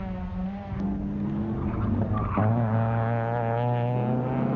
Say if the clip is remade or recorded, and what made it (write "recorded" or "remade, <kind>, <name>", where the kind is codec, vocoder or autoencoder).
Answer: recorded